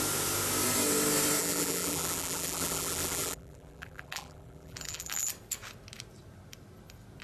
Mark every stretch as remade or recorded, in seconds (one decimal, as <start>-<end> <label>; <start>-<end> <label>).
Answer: 0.0-1.4 recorded; 1.4-5.3 remade; 5.3-7.2 recorded